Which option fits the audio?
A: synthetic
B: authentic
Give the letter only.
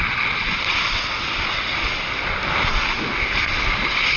B